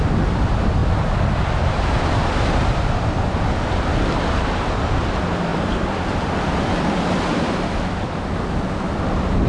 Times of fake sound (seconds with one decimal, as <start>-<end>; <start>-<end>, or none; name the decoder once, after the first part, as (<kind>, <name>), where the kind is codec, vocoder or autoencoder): 0.8-3.1 (vocoder, BigVGAN v2); 5.5-8.1